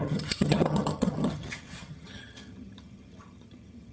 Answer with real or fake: fake